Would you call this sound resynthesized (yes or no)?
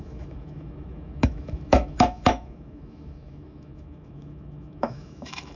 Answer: yes